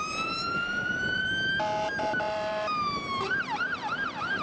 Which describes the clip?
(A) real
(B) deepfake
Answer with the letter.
B